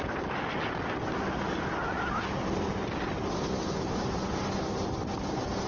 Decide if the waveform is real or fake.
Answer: real